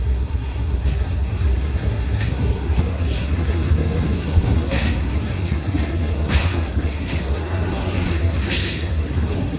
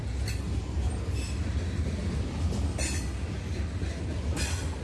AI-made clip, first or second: first